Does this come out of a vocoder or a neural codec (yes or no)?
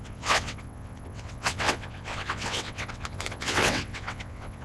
yes